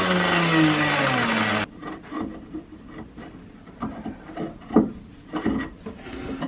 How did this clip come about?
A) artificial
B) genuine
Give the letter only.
B